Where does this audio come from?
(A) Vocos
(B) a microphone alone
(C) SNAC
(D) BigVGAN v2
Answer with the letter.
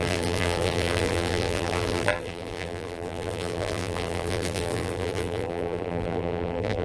D